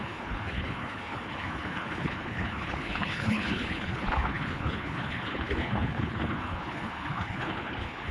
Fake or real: fake